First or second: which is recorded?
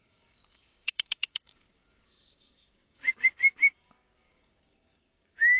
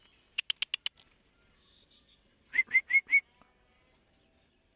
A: second